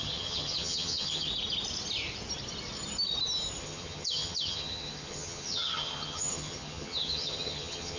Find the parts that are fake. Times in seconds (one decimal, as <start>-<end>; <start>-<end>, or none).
0.0-1.3; 3.6-8.0